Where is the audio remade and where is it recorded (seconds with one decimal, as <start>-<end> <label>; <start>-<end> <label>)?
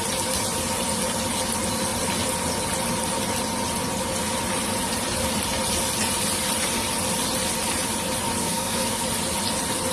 0.0-8.4 recorded; 8.4-9.0 remade; 9.0-9.9 recorded